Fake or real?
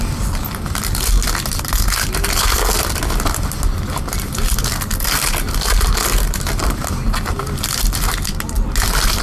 real